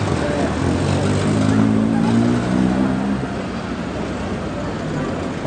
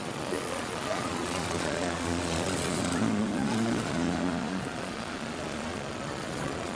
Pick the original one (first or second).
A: first